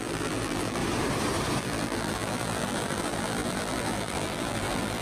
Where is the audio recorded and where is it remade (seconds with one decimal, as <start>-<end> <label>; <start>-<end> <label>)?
0.0-0.8 remade; 0.8-1.6 recorded; 1.6-5.0 remade